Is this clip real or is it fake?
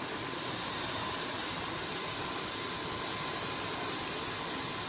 real